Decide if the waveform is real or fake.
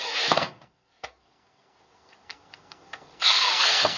fake